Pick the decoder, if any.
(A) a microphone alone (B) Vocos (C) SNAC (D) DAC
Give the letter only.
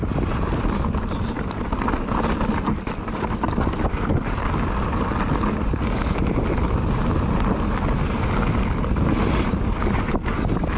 A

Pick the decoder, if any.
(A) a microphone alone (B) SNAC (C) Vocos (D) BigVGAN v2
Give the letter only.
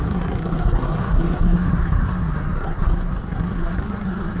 B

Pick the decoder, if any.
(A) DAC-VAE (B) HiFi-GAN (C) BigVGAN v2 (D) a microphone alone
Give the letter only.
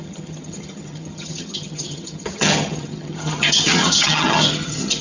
B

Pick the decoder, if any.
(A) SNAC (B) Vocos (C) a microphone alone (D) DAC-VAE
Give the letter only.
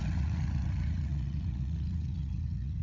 B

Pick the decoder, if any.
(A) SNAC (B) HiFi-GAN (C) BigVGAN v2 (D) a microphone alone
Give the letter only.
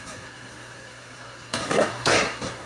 A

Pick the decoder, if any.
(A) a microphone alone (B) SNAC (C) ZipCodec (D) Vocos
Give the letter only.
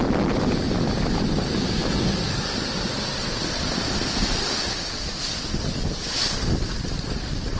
A